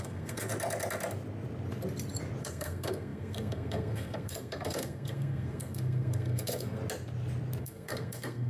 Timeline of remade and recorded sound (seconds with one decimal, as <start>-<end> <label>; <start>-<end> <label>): 0.0-0.5 remade; 0.5-2.4 recorded; 2.4-6.8 remade; 6.8-7.6 recorded; 7.6-8.5 remade